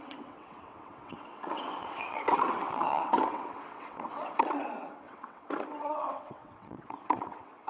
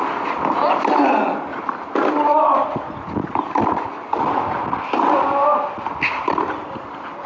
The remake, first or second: first